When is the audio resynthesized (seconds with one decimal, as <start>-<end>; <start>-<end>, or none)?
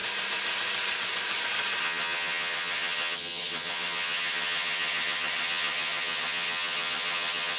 1.8-7.6